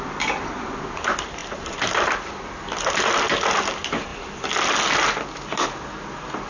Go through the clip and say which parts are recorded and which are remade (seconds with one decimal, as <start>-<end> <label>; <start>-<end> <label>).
0.0-1.4 recorded; 1.4-3.6 remade; 3.6-4.1 recorded; 4.1-4.7 remade; 4.7-6.5 recorded